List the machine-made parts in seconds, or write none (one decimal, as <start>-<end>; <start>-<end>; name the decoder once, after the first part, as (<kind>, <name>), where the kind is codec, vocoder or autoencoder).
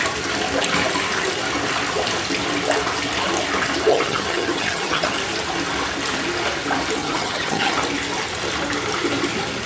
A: 3.9-5.1 (vocoder, HiFi-GAN); 7.0-7.8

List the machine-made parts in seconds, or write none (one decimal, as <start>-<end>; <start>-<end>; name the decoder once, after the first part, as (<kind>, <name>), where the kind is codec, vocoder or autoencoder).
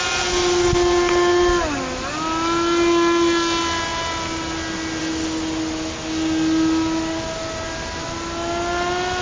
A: none